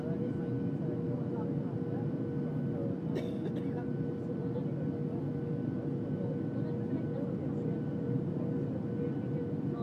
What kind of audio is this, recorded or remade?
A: recorded